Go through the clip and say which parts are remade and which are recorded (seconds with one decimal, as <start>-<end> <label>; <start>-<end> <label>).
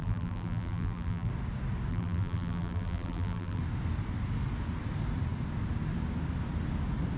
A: 0.0-1.3 remade; 1.3-1.9 recorded; 1.9-3.6 remade; 3.6-7.2 recorded